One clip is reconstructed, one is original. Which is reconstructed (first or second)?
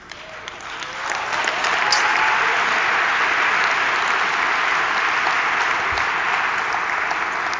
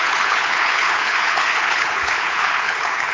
second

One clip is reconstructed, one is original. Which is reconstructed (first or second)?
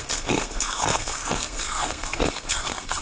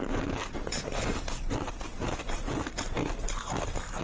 first